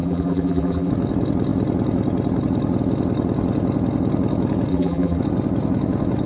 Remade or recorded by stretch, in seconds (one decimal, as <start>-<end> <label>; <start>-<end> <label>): 0.0-0.9 remade; 0.9-4.7 recorded; 4.7-5.2 remade; 5.2-6.3 recorded